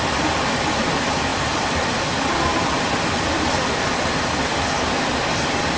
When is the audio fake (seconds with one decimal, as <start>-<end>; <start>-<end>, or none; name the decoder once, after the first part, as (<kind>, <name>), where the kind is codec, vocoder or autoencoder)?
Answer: 1.3-2.0 (vocoder, BigVGAN v2); 2.5-4.2